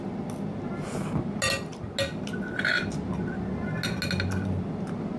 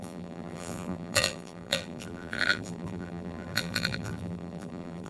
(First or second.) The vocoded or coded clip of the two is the second